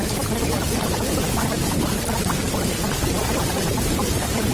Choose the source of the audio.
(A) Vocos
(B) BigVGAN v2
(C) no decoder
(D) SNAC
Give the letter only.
C